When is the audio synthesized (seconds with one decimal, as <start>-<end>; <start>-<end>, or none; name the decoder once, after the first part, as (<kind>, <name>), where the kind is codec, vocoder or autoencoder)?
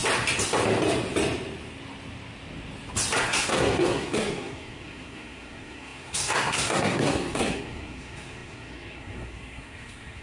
3.2-10.2 (codec, SNAC)